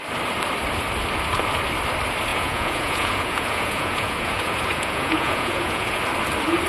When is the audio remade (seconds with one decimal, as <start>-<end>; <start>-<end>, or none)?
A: 2.3-6.0